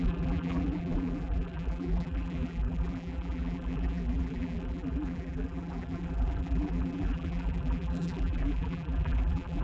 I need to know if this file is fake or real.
fake